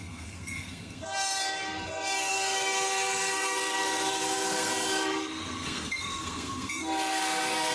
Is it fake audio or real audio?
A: fake